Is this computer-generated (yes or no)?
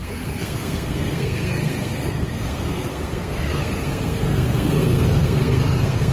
yes